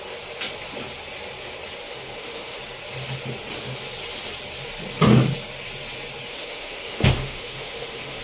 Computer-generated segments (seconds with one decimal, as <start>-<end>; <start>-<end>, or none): 1.8-2.6; 6.3-8.2